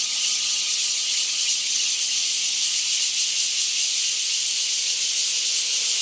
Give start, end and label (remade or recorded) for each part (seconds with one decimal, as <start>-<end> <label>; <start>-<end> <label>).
0.0-2.1 remade; 2.1-6.0 recorded